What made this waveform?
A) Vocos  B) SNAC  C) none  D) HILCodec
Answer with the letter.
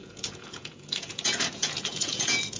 A